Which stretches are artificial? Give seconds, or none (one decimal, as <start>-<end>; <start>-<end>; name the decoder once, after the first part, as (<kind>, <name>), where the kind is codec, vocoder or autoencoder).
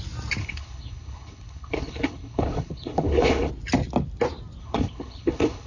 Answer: 0.4-3.5 (codec, HILCodec); 4.6-5.7